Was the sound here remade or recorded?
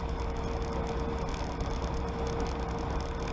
recorded